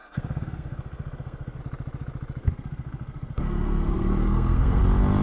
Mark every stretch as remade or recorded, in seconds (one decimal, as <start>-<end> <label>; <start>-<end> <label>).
0.0-1.6 remade; 1.6-2.4 recorded; 2.4-4.8 remade; 4.8-5.2 recorded